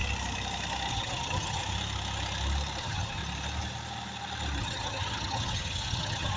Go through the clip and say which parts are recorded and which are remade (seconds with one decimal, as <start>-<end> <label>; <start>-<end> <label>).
0.0-0.9 recorded; 0.9-1.6 remade; 1.6-2.8 recorded; 2.8-3.2 remade; 3.2-4.6 recorded; 4.6-6.4 remade